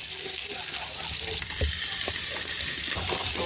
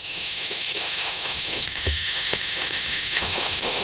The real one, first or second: first